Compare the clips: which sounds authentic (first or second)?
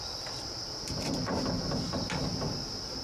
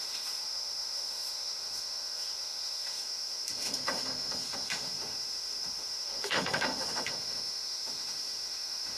first